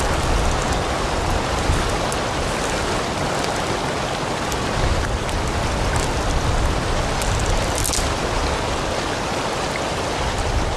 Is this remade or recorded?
recorded